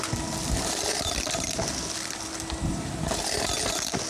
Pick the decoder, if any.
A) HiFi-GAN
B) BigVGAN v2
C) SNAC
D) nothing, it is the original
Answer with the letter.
B